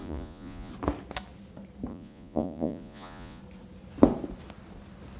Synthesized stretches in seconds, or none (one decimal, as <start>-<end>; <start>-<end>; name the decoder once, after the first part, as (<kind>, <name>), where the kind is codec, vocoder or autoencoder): 0.0-0.7 (vocoder, Vocos); 1.9-3.4